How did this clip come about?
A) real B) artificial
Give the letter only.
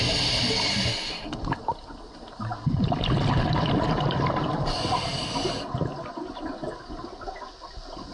A